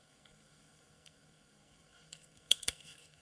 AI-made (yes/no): yes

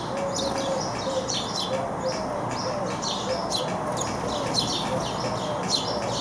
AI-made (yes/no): no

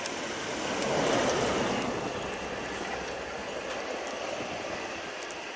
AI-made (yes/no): no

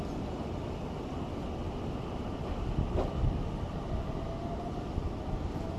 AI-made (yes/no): no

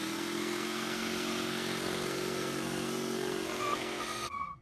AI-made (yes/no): yes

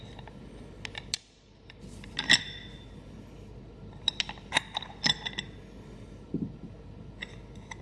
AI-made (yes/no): no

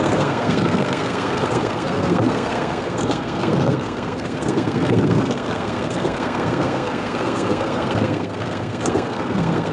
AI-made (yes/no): yes